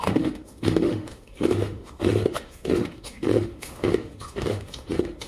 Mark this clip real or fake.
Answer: fake